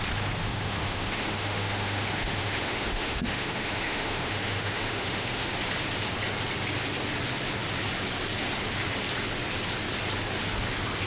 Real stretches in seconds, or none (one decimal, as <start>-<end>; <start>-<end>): 0.0-0.4; 5.5-11.1